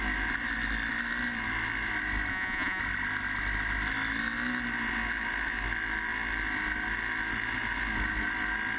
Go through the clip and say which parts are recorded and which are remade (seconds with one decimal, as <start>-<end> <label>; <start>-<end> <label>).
0.0-2.3 recorded; 2.3-2.8 remade; 2.8-8.8 recorded

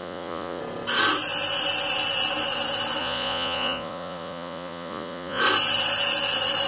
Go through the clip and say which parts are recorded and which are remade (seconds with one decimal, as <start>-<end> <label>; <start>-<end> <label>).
0.0-0.6 remade; 0.6-3.0 recorded; 3.0-5.4 remade; 5.4-6.7 recorded

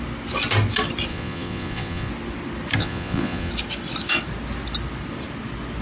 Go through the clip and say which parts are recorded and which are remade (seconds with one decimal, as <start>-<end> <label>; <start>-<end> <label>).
0.0-1.1 recorded; 1.1-2.1 remade; 2.1-2.8 recorded; 2.8-3.5 remade; 3.5-5.8 recorded